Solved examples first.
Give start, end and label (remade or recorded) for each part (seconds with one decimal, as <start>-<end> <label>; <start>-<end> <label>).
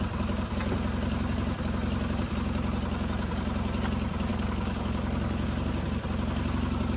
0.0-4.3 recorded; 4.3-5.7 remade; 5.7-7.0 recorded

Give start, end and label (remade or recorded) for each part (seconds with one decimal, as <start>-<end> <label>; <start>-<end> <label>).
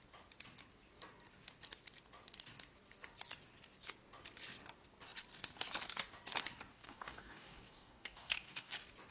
0.0-6.7 recorded; 6.7-8.7 remade; 8.7-9.1 recorded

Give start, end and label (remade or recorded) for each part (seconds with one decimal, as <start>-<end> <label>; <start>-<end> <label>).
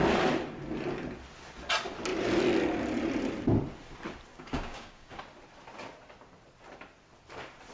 0.0-4.3 recorded; 4.3-5.2 remade; 5.2-7.7 recorded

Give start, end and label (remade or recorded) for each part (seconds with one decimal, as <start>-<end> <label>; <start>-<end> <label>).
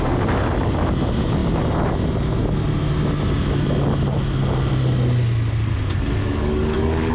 0.0-6.2 recorded; 6.2-7.1 remade